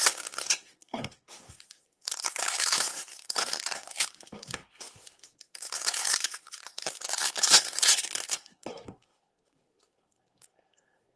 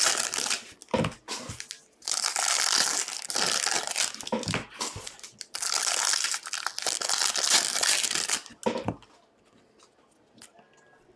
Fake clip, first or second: first